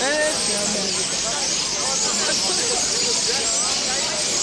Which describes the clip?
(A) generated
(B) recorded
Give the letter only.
B